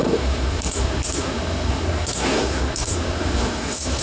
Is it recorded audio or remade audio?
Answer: remade